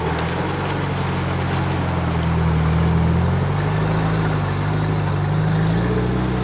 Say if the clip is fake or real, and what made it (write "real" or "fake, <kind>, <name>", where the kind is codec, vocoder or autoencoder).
real